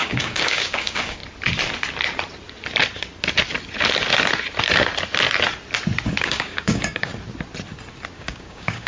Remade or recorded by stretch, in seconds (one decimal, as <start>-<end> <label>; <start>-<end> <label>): 0.0-1.2 remade; 1.2-6.2 recorded; 6.2-7.1 remade; 7.1-8.1 recorded; 8.1-8.9 remade